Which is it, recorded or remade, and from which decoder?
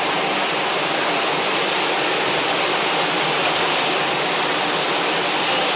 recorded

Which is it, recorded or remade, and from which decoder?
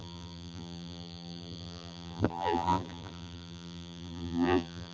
remade, vocoder, BigVGAN v2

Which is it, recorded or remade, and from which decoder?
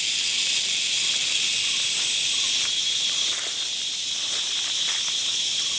recorded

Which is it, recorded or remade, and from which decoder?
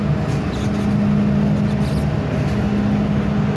recorded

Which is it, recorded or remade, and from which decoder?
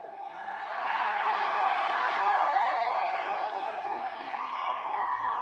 remade, codec, SNAC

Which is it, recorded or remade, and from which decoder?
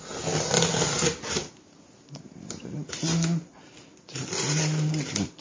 recorded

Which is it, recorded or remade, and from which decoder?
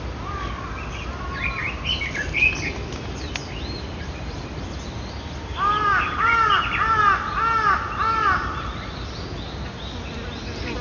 recorded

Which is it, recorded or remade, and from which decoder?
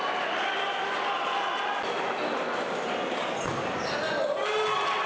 recorded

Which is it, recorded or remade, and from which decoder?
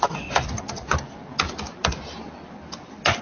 recorded